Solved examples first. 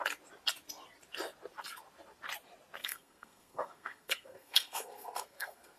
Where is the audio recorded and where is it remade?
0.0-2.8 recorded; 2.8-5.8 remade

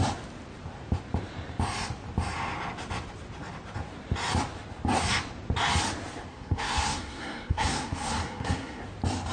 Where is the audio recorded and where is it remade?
0.0-6.3 recorded; 6.3-8.8 remade; 8.8-9.3 recorded

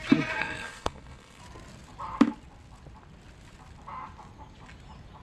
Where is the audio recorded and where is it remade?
0.0-0.4 recorded; 0.4-1.4 remade; 1.4-5.2 recorded